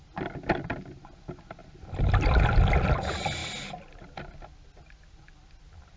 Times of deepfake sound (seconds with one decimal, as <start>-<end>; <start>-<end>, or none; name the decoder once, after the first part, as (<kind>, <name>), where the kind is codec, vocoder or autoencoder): 1.6-2.1 (vocoder, BigVGAN v2); 3.4-4.0